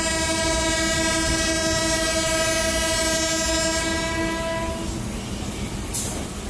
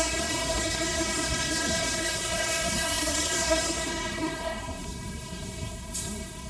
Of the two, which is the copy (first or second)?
second